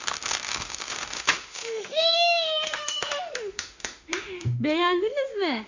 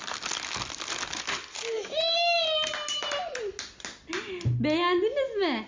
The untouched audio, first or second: second